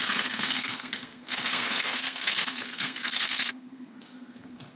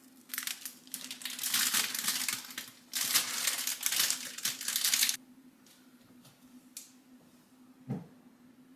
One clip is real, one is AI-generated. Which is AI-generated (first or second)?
first